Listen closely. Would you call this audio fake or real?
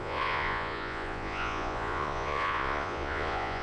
fake